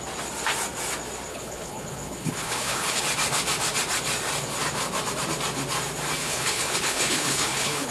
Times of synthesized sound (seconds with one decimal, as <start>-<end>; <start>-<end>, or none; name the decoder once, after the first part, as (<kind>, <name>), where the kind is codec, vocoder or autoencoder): 1.3-3.0 (codec, HILCodec); 6.2-7.9